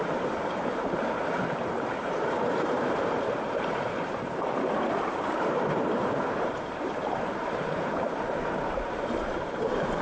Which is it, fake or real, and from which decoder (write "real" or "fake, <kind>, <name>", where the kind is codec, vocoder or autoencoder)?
fake, vocoder, BigVGAN v2